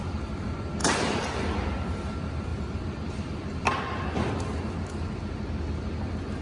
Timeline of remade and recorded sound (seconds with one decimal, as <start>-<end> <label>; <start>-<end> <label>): 0.0-0.8 recorded; 0.8-2.0 remade; 2.0-2.5 recorded; 2.5-4.0 remade; 4.0-6.4 recorded